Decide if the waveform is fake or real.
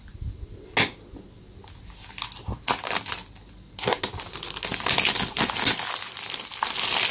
real